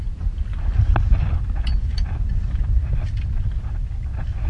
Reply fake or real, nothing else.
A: real